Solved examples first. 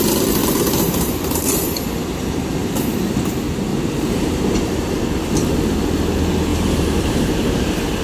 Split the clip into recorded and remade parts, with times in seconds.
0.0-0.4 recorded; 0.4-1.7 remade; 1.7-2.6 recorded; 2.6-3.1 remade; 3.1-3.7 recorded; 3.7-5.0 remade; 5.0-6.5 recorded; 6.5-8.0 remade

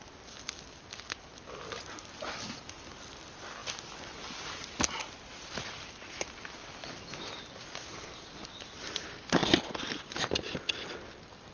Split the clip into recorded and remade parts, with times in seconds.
0.0-9.4 recorded; 9.4-10.1 remade; 10.1-11.5 recorded

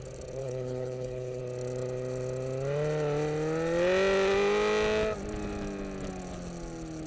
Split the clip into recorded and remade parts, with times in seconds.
0.0-0.4 recorded; 0.4-1.4 remade; 1.4-7.1 recorded

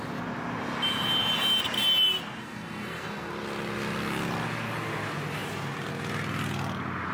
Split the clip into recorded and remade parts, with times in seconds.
0.0-2.4 recorded; 2.4-3.3 remade; 3.3-7.1 recorded

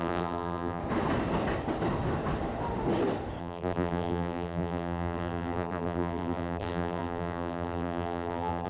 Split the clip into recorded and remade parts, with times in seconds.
0.0-0.8 remade; 0.8-3.4 recorded; 3.4-8.7 remade

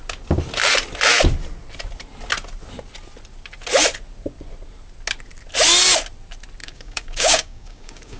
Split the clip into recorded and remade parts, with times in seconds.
0.0-6.6 recorded; 6.6-8.2 remade

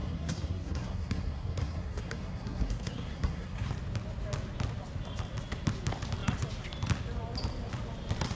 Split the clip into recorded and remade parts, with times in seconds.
0.0-3.7 remade; 3.7-8.3 recorded

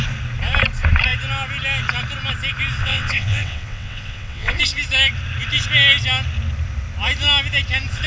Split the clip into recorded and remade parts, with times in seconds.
0.0-2.8 recorded; 2.8-4.6 remade; 4.6-8.1 recorded